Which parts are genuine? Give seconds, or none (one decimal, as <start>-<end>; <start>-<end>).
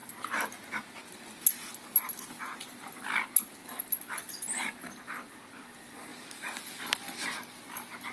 0.0-8.1